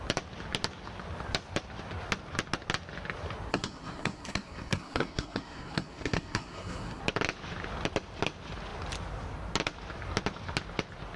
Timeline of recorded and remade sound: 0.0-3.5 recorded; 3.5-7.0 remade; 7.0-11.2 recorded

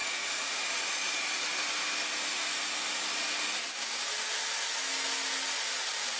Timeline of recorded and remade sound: 0.0-0.6 remade; 0.6-6.2 recorded

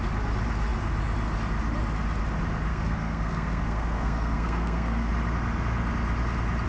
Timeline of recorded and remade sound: 0.0-2.7 recorded; 2.7-5.1 remade; 5.1-6.7 recorded

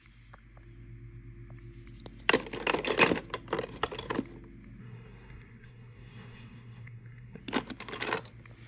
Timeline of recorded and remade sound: 0.0-4.8 recorded; 4.8-7.4 remade; 7.4-8.7 recorded